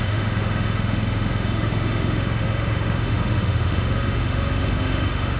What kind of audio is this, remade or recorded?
remade